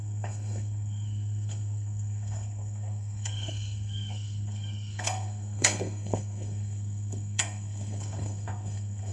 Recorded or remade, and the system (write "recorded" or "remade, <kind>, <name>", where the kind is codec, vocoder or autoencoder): remade, codec, SNAC